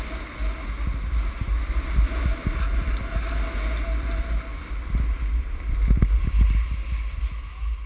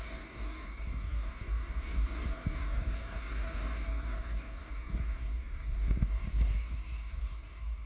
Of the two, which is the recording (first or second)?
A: first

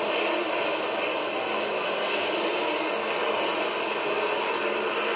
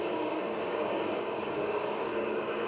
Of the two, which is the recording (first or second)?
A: first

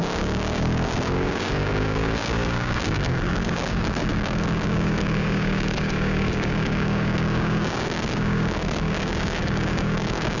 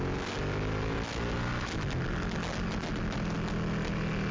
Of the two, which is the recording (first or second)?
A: second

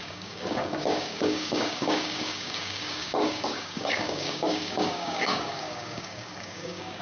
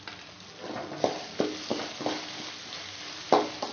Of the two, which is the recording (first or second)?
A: second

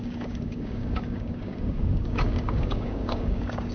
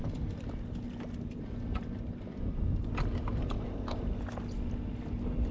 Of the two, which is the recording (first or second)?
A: second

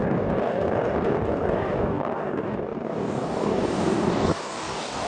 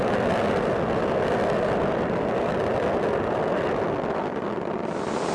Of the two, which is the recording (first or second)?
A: second